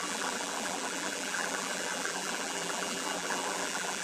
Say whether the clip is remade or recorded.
remade